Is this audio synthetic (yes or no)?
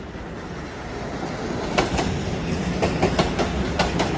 no